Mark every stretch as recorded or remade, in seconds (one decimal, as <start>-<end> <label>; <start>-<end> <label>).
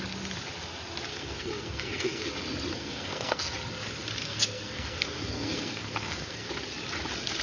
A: 0.0-1.1 recorded; 1.1-2.3 remade; 2.3-2.7 recorded; 2.7-3.5 remade; 3.5-4.2 recorded; 4.2-6.5 remade; 6.5-7.4 recorded